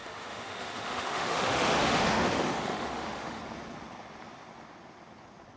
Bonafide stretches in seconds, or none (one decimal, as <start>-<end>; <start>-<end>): 3.4-5.6